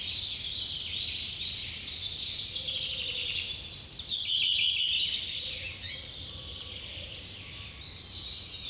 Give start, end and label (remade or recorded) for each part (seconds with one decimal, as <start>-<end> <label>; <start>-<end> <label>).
0.0-3.2 recorded; 3.2-4.1 remade; 4.1-8.7 recorded